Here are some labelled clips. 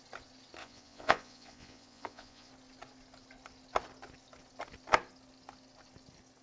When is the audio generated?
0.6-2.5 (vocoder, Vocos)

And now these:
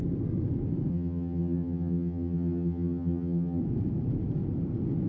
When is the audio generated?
0.9-3.6 (vocoder, HiFi-GAN)

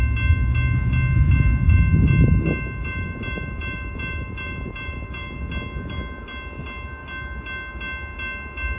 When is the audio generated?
2.8-5.4 (vocoder, BigVGAN v2)